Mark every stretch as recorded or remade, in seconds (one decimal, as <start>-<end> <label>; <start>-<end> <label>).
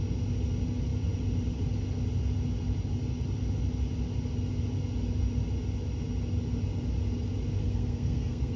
0.0-7.6 recorded; 7.6-8.6 remade